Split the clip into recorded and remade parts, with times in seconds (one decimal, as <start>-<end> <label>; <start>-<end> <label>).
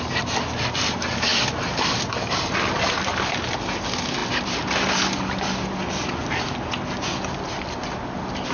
0.0-8.5 recorded